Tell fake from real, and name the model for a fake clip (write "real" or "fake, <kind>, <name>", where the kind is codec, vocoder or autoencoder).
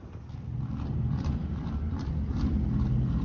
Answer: real